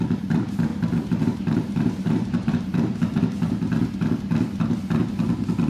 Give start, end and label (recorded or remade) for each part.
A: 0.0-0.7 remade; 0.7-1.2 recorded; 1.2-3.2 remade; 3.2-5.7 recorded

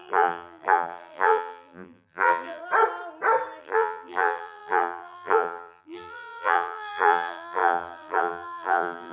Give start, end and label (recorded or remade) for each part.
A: 0.0-2.6 remade; 2.6-3.6 recorded; 3.6-9.1 remade

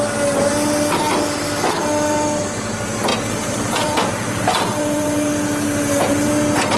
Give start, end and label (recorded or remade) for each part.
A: 0.0-3.1 recorded; 3.1-5.3 remade; 5.3-6.8 recorded

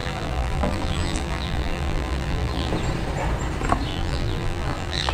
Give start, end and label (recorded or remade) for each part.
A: 0.0-2.7 remade; 2.7-3.9 recorded; 3.9-5.1 remade

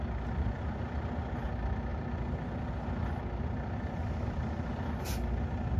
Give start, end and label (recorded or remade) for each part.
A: 0.0-5.8 recorded

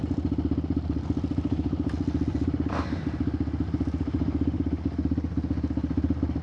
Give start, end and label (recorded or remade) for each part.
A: 0.0-2.3 recorded; 2.3-3.2 remade; 3.2-6.4 recorded